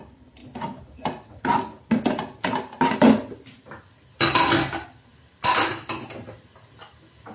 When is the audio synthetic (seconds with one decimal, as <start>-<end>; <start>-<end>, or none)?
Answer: none